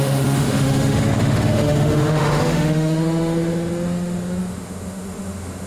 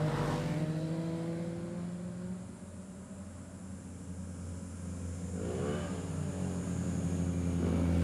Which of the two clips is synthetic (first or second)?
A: first